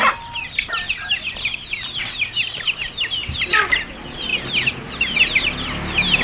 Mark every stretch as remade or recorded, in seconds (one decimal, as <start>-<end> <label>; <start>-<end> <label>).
0.0-6.2 recorded